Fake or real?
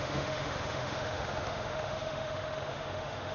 fake